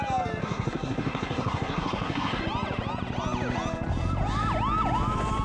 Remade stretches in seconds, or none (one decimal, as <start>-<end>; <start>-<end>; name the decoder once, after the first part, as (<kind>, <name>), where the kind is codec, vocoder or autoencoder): 0.4-2.4 (codec, SNAC)